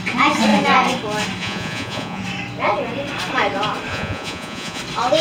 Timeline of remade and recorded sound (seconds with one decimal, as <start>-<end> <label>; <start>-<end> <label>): 0.0-1.4 recorded; 1.4-2.2 remade; 2.2-3.9 recorded; 3.9-4.8 remade; 4.8-5.2 recorded